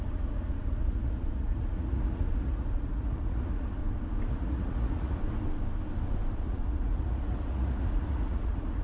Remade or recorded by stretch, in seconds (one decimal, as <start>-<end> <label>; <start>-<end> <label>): 0.0-3.8 remade; 3.8-4.3 recorded; 4.3-5.2 remade; 5.2-6.4 recorded; 6.4-8.8 remade